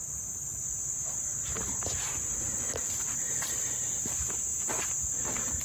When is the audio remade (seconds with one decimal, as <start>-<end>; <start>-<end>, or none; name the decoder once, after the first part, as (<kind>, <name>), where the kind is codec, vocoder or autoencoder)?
none